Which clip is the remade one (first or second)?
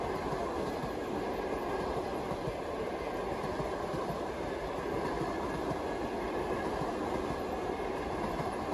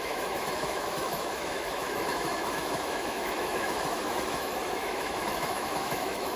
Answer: second